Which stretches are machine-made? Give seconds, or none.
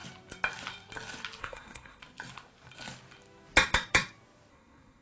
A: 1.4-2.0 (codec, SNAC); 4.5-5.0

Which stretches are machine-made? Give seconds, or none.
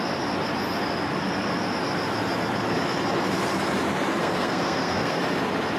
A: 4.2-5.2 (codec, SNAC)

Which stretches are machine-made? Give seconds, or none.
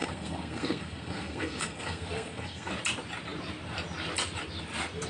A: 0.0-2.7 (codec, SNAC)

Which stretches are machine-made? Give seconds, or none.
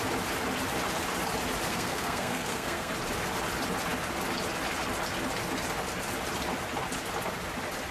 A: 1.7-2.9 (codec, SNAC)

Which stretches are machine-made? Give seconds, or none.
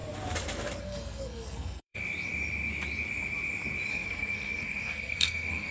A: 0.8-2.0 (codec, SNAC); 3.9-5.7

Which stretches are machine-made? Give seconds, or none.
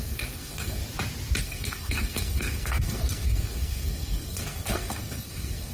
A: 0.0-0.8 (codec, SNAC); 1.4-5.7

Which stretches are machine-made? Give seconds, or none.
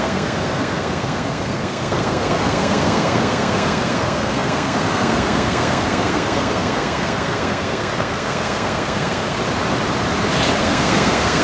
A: 0.0-9.4 (codec, SNAC); 10.6-11.4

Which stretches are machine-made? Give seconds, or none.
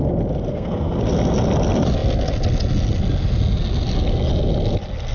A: 0.5-1.0 (codec, SNAC)